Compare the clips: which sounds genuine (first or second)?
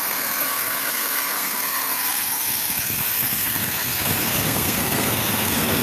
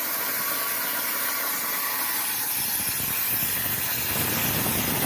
second